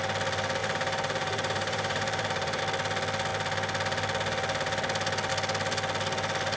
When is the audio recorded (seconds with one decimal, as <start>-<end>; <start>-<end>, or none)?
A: 0.0-0.6; 2.6-6.6